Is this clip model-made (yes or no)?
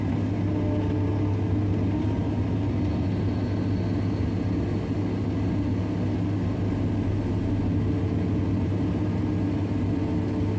no